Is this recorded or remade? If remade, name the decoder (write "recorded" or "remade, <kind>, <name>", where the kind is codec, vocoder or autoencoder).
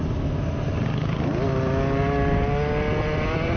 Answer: recorded